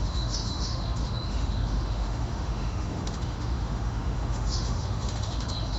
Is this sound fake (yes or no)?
yes